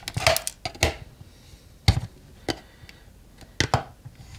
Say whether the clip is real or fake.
real